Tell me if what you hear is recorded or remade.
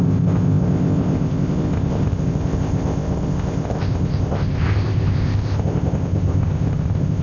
remade